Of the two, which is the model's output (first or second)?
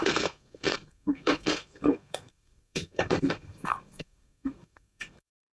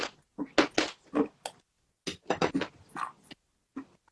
first